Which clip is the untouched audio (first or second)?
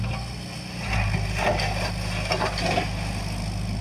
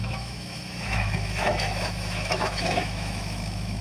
first